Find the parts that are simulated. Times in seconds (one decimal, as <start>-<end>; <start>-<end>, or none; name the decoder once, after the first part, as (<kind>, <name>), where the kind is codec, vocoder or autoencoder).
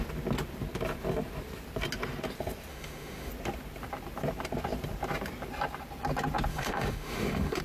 2.7-3.3 (autoencoder, DAC-VAE); 6.5-7.6